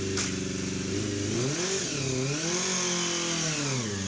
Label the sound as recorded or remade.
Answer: recorded